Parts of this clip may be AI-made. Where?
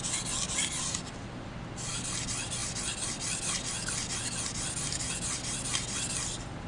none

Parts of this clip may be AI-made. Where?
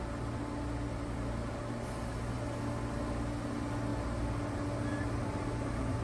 none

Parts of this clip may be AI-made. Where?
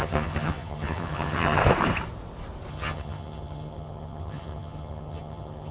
0.0-1.6; 2.7-5.7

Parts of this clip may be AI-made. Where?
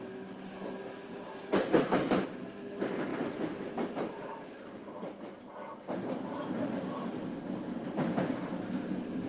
1.6-2.4; 3.1-6.8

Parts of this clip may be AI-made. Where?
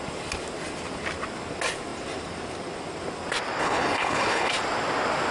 3.6-4.5